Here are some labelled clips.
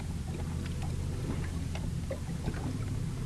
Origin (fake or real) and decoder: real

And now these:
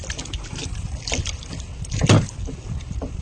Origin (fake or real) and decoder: real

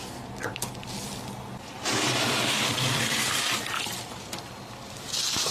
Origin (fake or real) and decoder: real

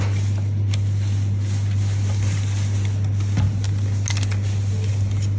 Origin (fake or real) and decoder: real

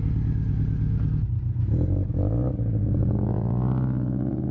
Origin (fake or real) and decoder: real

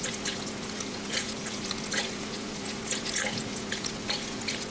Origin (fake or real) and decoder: fake, vocoder, Vocos